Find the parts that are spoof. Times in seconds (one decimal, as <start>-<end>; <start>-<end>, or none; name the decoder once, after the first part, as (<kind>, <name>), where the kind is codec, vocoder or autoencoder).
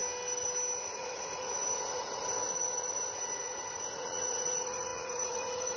0.8-5.8 (vocoder, Vocos)